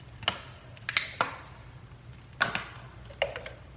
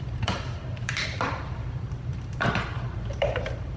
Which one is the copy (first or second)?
second